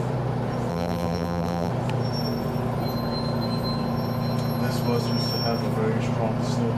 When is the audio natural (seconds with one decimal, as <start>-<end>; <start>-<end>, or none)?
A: 0.0-0.7; 1.7-6.8